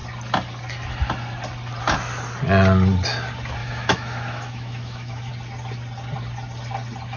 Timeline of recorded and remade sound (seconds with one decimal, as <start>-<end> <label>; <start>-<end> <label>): 0.0-3.6 recorded; 3.6-5.3 remade; 5.3-7.2 recorded